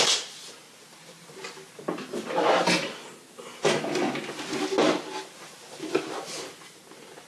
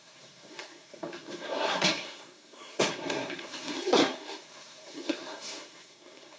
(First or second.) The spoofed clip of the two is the second